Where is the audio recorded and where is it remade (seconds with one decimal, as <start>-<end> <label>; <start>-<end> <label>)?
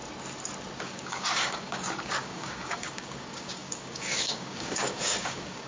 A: 0.0-0.8 recorded; 0.8-5.7 remade